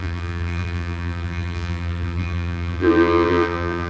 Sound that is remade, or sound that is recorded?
remade